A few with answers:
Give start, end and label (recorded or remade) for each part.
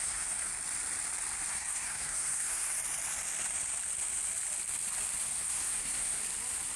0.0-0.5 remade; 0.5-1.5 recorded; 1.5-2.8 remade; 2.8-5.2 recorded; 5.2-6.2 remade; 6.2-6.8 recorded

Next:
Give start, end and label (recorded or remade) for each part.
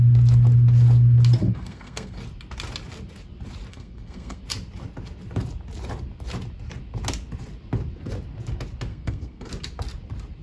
0.0-1.4 recorded; 1.4-2.2 remade; 2.2-3.7 recorded; 3.7-4.4 remade; 4.4-8.9 recorded; 8.9-9.5 remade; 9.5-10.4 recorded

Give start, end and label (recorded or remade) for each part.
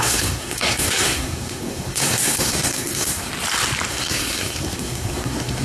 0.0-3.3 remade; 3.3-3.9 recorded; 3.9-5.6 remade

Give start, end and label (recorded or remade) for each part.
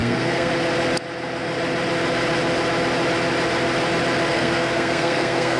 0.0-0.5 remade; 0.5-4.3 recorded; 4.3-5.6 remade